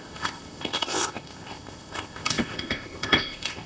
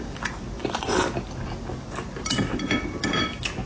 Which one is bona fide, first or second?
second